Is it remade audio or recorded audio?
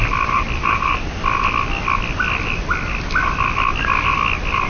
recorded